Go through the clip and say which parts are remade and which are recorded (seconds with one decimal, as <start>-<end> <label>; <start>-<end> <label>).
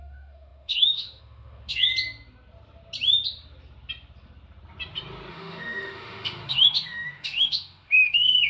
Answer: 0.0-1.9 remade; 1.9-5.3 recorded; 5.3-8.5 remade